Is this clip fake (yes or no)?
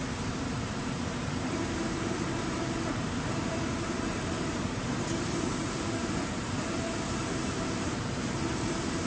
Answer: yes